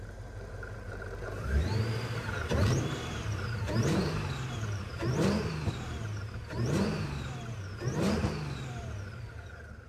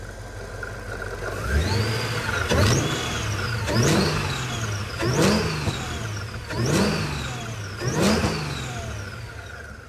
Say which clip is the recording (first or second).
second